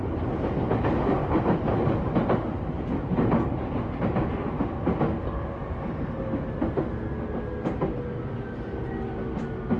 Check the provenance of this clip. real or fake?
real